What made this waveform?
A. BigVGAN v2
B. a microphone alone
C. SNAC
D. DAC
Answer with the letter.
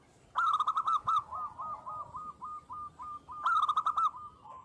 B